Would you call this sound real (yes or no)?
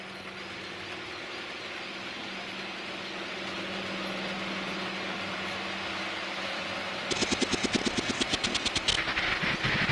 yes